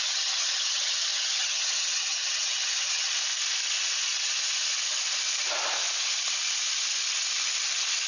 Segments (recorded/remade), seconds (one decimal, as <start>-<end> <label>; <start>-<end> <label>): 0.0-3.1 remade; 3.1-8.1 recorded